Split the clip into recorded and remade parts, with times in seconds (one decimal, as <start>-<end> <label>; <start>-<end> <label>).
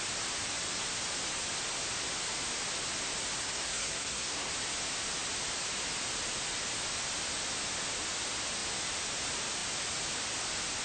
0.0-3.4 recorded; 3.4-4.5 remade; 4.5-10.8 recorded